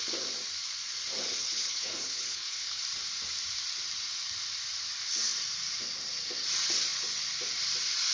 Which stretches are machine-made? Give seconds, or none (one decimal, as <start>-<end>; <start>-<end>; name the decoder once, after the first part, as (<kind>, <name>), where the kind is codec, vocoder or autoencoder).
1.4-2.8 (codec, HILCodec)